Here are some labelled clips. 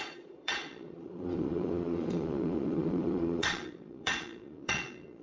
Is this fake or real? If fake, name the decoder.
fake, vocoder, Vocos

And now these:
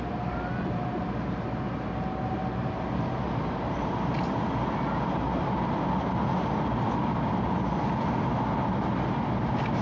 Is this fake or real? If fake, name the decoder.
real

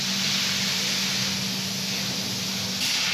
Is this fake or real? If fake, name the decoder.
real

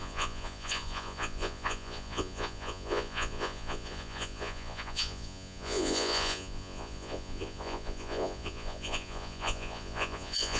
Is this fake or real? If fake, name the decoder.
fake, vocoder, Vocos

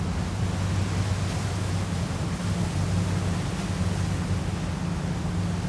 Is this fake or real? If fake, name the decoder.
real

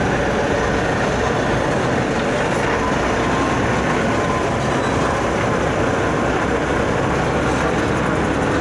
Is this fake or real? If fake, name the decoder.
real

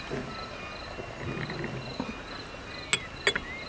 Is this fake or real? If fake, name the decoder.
real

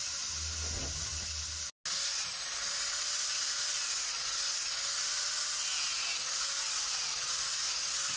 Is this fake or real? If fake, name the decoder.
real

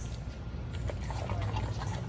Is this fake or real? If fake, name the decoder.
real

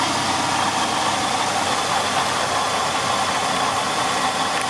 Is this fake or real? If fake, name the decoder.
real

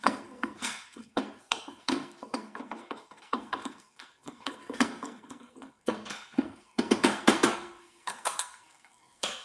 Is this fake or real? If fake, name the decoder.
fake, codec, SNAC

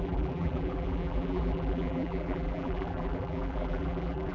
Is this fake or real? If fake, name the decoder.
fake, vocoder, BigVGAN v2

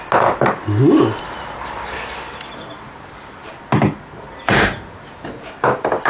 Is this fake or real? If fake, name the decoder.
real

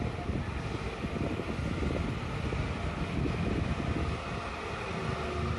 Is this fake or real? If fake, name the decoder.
real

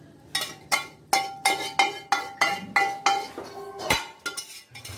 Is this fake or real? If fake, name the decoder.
real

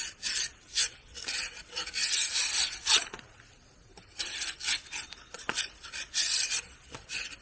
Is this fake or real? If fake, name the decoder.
fake, vocoder, BigVGAN v2